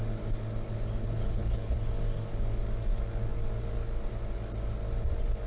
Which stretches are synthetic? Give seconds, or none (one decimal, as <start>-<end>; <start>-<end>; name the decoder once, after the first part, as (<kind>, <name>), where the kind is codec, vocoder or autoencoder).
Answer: 1.0-1.9 (codec, HILCodec)